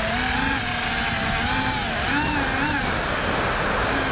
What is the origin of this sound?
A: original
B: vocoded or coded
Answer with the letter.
A